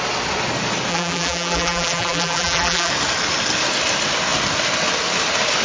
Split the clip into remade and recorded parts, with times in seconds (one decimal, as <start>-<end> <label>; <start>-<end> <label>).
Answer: 0.0-0.9 recorded; 0.9-2.9 remade; 2.9-5.6 recorded